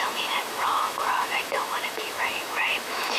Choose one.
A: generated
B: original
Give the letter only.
A